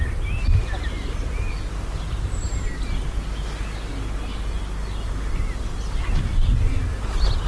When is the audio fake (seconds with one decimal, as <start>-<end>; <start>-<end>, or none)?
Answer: none